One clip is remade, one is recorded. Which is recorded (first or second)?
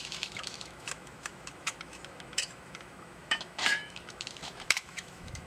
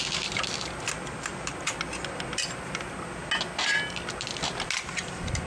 second